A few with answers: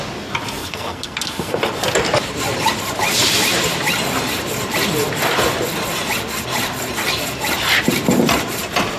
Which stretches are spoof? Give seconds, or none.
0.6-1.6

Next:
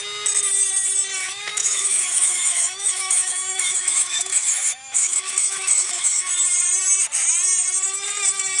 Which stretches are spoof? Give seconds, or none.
1.2-6.3

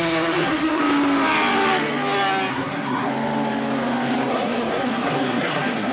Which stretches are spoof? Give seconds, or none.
0.0-0.8; 2.5-3.1; 4.3-5.9

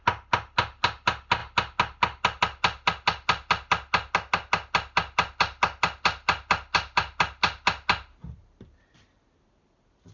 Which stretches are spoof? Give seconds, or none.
none

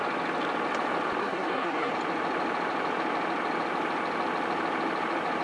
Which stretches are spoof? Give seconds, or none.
1.2-1.9

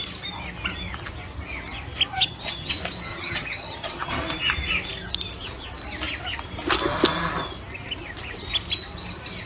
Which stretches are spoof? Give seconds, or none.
2.1-2.7; 3.1-4.2

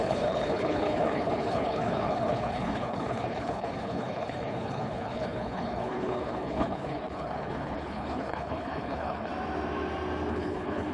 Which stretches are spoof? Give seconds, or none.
0.0-9.3; 10.3-10.9

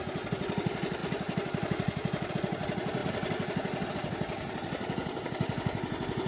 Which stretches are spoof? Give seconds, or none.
none